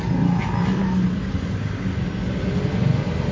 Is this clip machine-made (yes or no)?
no